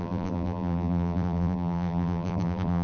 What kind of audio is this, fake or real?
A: fake